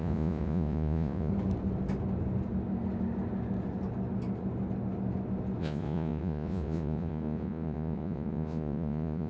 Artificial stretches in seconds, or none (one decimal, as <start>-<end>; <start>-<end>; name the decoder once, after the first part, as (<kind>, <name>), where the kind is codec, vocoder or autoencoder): 0.0-1.3 (vocoder, Vocos); 5.6-9.3